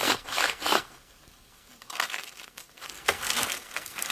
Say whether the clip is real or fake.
fake